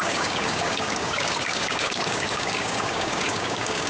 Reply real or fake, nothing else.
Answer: fake